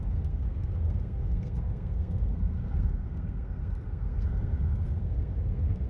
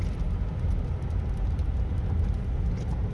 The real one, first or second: second